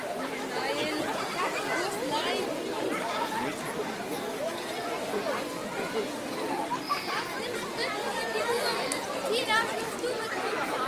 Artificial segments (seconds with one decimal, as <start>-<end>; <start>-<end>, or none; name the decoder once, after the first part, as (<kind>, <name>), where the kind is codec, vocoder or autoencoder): 0.0-10.9 (vocoder, BigVGAN v2)